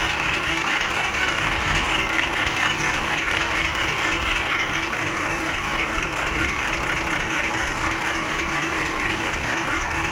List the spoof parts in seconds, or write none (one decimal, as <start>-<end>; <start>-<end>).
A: 0.0-6.7; 7.2-10.1